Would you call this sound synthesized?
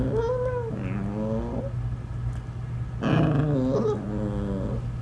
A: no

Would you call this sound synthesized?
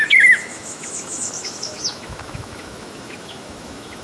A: yes